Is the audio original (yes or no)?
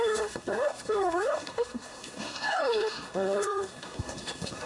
no